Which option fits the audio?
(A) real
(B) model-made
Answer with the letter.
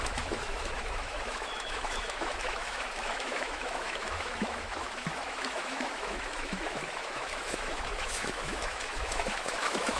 B